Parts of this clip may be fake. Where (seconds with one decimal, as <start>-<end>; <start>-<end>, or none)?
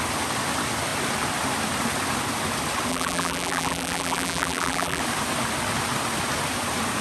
2.9-5.0